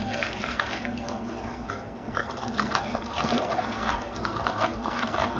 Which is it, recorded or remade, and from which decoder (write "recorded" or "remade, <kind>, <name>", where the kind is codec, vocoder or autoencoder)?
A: remade, codec, SNAC